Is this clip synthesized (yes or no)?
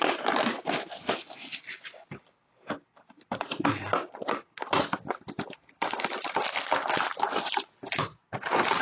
no